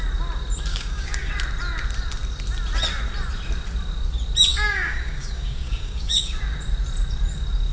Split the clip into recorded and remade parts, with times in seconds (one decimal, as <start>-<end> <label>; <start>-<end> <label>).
0.0-0.7 recorded; 0.7-1.3 remade; 1.3-4.5 recorded; 4.5-6.4 remade; 6.4-7.7 recorded